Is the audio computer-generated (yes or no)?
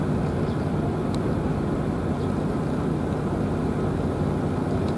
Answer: no